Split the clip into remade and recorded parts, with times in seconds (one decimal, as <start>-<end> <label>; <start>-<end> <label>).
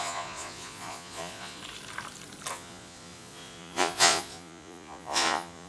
0.0-1.6 remade; 1.6-2.5 recorded; 2.5-5.7 remade